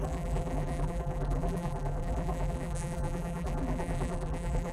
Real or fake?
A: fake